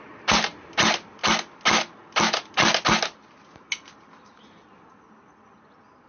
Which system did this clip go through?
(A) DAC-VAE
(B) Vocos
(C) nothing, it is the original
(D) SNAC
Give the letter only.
C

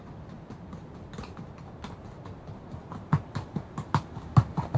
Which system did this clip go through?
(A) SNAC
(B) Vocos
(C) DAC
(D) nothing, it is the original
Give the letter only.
D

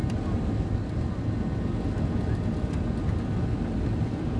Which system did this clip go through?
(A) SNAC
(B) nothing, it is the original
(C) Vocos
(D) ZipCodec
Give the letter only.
B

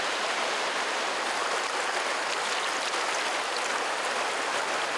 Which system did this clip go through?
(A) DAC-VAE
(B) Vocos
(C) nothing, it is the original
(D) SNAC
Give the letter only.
C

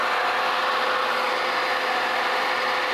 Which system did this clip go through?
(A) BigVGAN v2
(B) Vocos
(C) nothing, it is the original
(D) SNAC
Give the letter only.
C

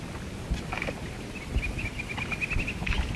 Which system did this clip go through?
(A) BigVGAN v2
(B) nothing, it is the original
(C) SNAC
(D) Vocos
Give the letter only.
B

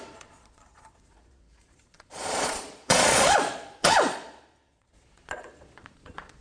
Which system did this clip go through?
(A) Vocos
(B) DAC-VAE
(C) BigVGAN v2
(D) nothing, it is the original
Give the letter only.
A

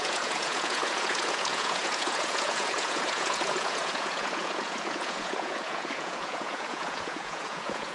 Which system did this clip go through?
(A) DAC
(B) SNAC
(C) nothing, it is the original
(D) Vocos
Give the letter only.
D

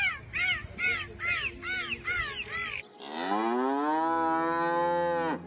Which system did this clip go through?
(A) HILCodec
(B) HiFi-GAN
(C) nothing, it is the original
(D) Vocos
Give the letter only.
C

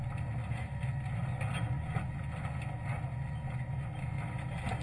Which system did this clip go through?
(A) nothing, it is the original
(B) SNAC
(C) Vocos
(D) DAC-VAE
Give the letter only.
A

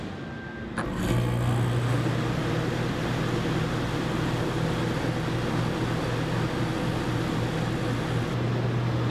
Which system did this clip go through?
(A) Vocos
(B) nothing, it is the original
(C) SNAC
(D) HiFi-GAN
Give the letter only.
B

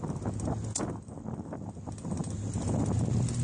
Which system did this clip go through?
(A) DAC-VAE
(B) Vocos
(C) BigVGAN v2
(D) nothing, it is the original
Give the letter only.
D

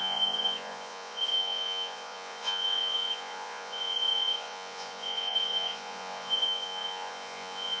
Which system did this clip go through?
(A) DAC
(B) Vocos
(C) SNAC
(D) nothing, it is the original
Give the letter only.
B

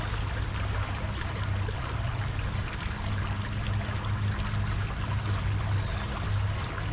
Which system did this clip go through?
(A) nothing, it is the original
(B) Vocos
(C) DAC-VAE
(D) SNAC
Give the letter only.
A